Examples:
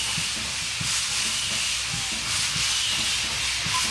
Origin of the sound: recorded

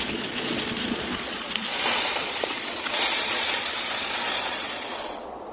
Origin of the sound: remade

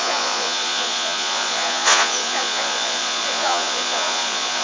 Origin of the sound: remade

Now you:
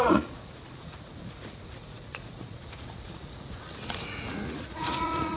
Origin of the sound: remade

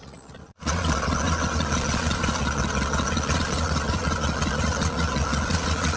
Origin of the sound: remade